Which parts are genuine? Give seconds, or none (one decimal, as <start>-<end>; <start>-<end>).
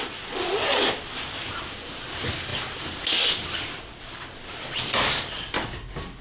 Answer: 0.0-6.2